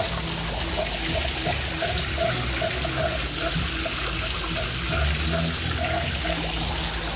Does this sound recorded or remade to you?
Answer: recorded